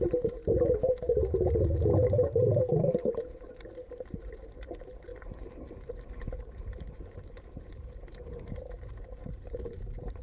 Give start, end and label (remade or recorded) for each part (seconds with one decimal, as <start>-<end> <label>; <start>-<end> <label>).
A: 0.0-10.2 remade